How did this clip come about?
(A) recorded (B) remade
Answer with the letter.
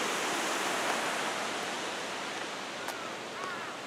A